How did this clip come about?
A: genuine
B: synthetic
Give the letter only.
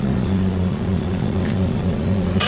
B